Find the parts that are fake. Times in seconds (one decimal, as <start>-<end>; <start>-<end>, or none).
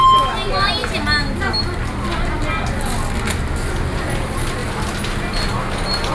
none